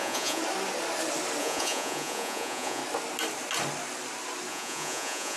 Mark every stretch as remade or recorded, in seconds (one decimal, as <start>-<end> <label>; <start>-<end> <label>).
0.0-0.4 remade; 0.4-1.4 recorded; 1.4-2.8 remade; 2.8-4.5 recorded; 4.5-5.4 remade

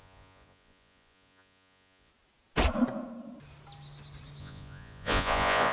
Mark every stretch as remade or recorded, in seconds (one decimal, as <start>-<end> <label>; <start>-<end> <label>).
0.0-2.1 remade; 2.1-4.4 recorded; 4.4-5.7 remade

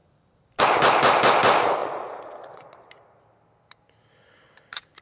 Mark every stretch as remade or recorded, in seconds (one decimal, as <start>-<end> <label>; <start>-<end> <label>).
0.0-1.8 recorded; 1.8-2.9 remade; 2.9-5.0 recorded

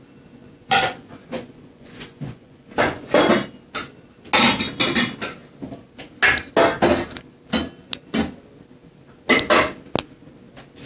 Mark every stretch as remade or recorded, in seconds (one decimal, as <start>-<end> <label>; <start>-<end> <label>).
0.0-0.4 recorded; 0.4-3.2 remade; 3.2-10.9 recorded